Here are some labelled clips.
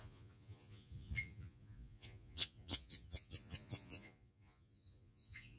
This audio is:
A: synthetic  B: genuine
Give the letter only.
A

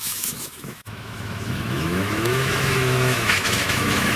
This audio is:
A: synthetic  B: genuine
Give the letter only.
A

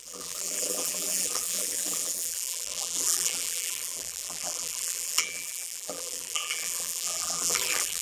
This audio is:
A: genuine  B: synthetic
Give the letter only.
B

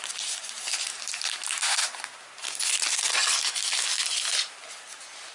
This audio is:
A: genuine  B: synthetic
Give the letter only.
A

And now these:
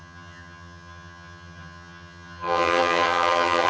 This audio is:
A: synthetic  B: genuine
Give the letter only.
A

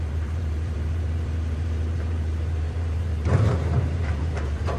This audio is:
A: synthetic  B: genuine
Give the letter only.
A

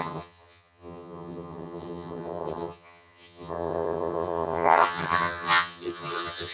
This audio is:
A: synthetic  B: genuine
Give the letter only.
A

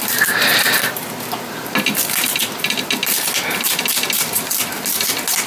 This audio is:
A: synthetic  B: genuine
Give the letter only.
B